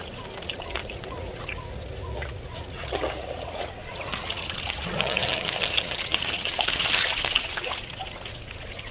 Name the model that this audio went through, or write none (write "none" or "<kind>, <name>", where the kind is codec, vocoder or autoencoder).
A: vocoder, Vocos